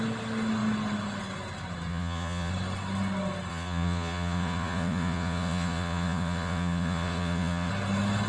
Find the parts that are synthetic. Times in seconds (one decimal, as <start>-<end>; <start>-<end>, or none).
1.9-2.5; 3.5-7.7

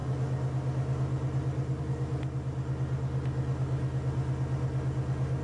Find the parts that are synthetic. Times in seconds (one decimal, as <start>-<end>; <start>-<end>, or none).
none

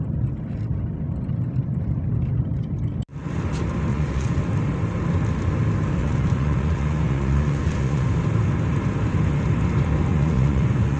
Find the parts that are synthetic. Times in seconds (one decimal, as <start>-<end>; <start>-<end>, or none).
3.9-4.4; 6.0-8.1; 10.1-11.0

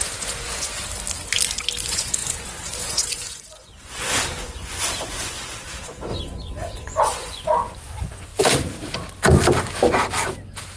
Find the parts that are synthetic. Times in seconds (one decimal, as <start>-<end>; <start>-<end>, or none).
0.0-0.8; 1.8-8.3

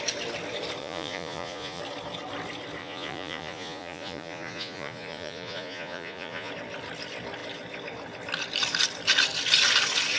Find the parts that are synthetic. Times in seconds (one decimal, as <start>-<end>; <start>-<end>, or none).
0.8-1.8; 2.8-6.5

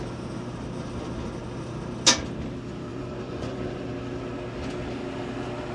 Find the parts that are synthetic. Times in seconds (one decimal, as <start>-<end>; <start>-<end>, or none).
2.9-3.8

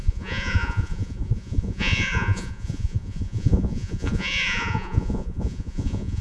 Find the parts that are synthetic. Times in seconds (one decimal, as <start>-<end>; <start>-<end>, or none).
0.0-6.2

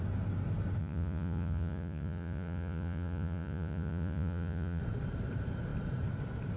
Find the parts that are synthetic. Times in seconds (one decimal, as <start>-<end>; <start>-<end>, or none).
0.8-4.8